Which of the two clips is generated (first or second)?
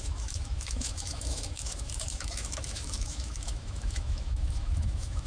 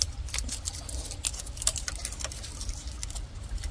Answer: first